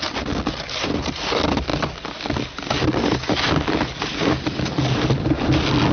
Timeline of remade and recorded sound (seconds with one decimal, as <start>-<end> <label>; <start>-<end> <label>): 0.0-5.9 recorded